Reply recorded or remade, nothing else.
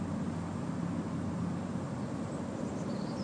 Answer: recorded